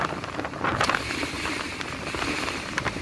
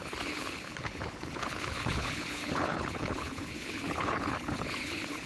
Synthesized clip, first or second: second